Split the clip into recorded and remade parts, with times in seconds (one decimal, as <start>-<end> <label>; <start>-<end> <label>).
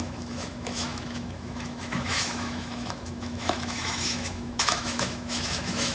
0.0-5.9 remade